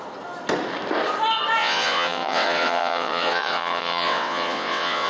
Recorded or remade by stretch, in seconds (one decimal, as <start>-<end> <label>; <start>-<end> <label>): 0.0-1.6 recorded; 1.6-5.1 remade